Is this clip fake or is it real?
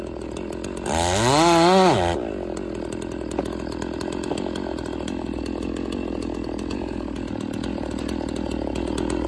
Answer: real